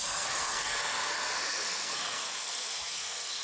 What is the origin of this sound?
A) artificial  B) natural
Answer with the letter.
A